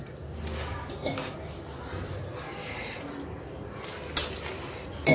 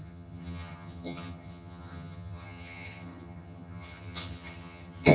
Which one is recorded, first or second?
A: first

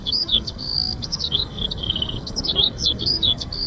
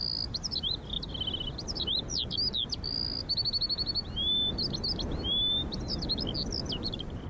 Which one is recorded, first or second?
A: second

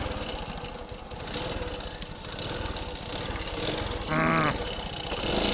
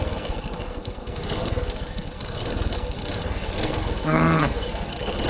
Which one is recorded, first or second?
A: first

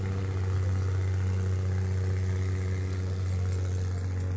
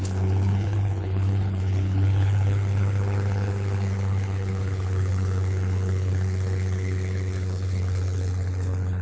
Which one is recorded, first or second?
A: first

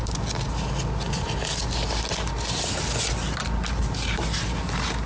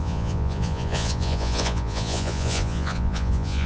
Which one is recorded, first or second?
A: first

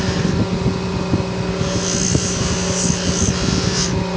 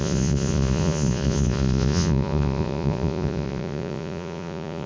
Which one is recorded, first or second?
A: first